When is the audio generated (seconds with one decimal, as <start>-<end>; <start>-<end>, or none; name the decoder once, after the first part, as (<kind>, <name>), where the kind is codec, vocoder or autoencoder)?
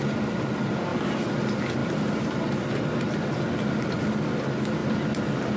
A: none